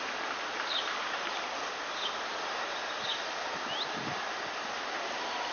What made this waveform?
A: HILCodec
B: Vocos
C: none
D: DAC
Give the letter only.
C